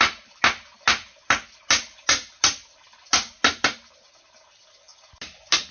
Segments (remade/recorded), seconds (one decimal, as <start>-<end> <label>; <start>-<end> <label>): 0.0-5.7 recorded